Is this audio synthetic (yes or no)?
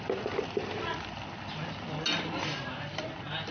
no